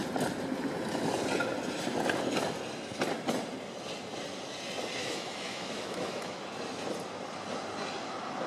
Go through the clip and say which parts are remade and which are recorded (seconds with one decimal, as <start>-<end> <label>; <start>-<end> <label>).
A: 0.0-5.0 recorded; 5.0-6.4 remade; 6.4-8.5 recorded